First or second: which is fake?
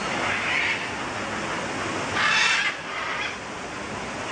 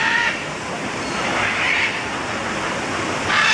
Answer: second